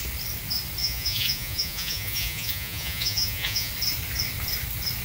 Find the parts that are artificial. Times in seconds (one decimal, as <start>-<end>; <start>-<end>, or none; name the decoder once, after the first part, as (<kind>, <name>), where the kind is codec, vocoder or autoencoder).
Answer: 0.8-3.7 (vocoder, Vocos)